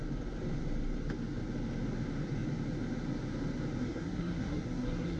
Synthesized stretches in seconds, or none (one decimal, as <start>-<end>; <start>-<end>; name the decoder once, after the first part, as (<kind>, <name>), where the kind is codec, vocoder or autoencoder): 3.8-5.2 (codec, SNAC)